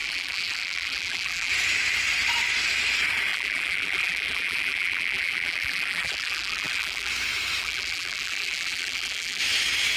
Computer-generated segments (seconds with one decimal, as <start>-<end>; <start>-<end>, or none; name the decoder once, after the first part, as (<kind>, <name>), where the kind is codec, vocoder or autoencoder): 0.0-1.5 (vocoder, BigVGAN v2); 3.3-7.1; 7.6-9.4